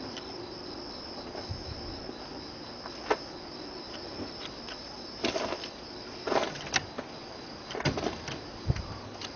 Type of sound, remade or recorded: recorded